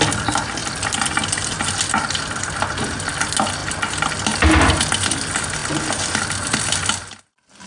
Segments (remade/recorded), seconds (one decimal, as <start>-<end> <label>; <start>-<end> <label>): 0.0-7.7 recorded